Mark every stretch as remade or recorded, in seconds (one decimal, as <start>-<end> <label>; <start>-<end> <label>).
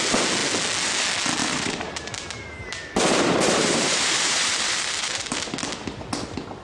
0.0-1.4 recorded; 1.4-5.4 remade; 5.4-6.6 recorded